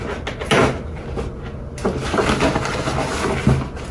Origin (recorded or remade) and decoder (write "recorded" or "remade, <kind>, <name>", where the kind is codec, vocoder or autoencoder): recorded